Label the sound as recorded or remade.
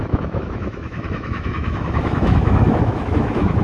remade